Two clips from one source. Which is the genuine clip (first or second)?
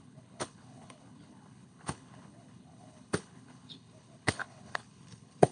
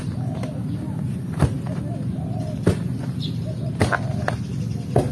second